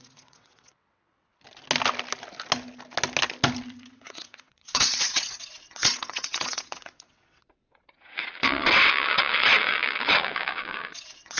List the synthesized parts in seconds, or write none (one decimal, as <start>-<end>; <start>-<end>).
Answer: 0.0-1.3; 3.9-11.4